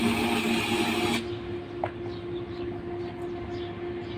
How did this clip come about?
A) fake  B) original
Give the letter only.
B